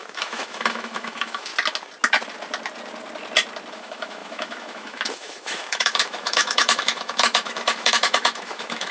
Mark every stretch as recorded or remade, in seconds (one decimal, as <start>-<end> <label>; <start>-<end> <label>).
0.0-1.5 remade; 1.5-3.7 recorded; 3.7-8.9 remade